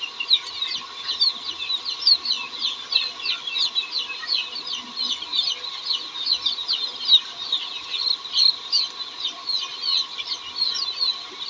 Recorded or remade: recorded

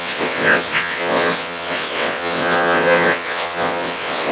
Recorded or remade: remade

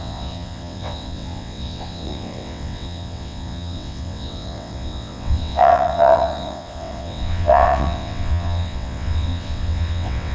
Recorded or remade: remade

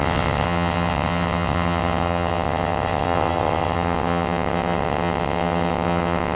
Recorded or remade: remade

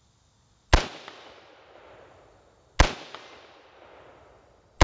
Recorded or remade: recorded